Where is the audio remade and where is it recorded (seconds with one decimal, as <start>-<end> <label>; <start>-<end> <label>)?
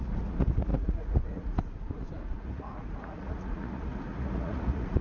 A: 0.0-5.0 remade